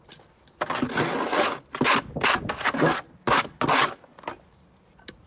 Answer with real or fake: real